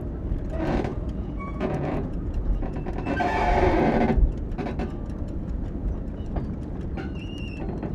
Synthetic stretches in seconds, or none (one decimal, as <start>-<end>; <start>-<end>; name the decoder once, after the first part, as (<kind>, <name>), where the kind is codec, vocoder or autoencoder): 0.9-2.9 (vocoder, Vocos)